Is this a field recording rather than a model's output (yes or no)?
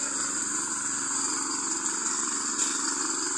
yes